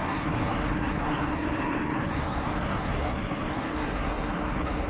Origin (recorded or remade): remade